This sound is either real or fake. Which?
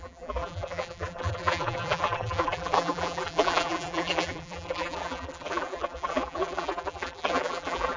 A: fake